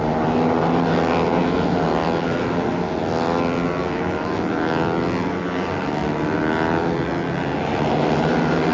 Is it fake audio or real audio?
real